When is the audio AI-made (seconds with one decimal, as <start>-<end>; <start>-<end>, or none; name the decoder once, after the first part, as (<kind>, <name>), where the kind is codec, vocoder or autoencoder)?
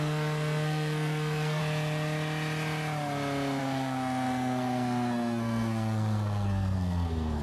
0.0-1.6 (codec, SNAC); 3.6-7.4